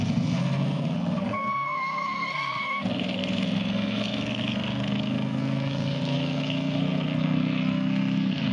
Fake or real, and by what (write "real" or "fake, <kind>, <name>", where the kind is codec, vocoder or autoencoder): fake, codec, SNAC